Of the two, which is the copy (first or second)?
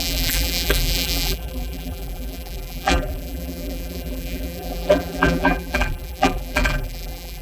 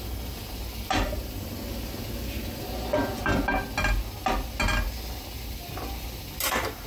first